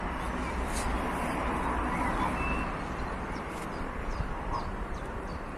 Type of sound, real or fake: fake